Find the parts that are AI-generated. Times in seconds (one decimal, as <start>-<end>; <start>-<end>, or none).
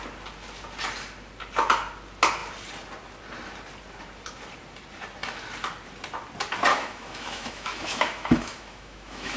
6.7-9.4